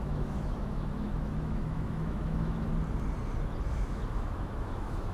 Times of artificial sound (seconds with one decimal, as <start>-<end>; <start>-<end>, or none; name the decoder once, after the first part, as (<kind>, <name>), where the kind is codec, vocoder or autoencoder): 0.0-2.7 (autoencoder, DAC-VAE); 3.7-5.1